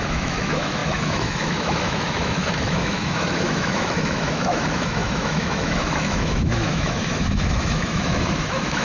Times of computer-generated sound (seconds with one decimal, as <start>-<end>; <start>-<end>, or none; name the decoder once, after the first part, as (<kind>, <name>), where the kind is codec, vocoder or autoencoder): 0.0-8.8 (autoencoder, DAC-VAE)